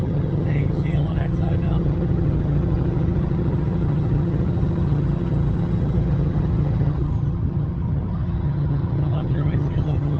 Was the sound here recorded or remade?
remade